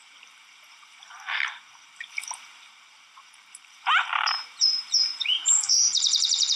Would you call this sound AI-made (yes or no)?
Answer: yes